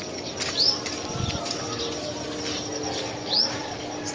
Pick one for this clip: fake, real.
real